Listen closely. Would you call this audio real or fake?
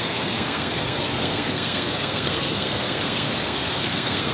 fake